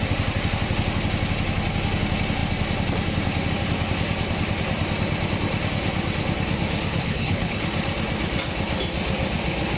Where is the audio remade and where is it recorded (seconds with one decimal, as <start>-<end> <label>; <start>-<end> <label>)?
0.0-7.0 recorded; 7.0-7.6 remade; 7.6-9.8 recorded